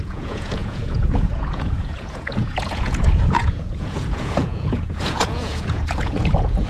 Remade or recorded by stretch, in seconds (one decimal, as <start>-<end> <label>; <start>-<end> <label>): 0.0-6.7 remade